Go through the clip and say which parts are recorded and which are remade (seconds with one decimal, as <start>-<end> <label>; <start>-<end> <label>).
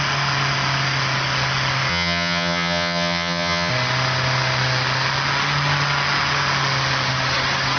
0.0-1.9 recorded; 1.9-3.7 remade; 3.7-7.8 recorded